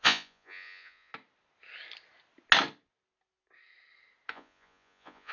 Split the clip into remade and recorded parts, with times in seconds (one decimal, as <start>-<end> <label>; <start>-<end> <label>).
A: 0.0-1.1 remade; 1.1-4.3 recorded; 4.3-5.3 remade